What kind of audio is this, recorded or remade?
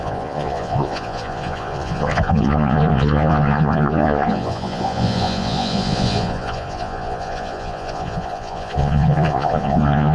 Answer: remade